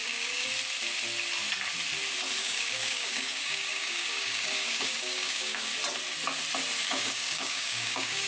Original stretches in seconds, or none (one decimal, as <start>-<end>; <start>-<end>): 0.5-2.4; 5.7-6.8